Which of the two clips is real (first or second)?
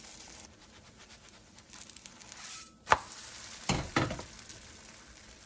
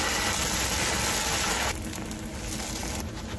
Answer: second